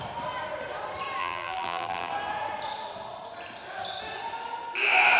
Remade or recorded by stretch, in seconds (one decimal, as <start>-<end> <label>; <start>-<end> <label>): 0.0-1.2 recorded; 1.2-2.1 remade; 2.1-5.2 recorded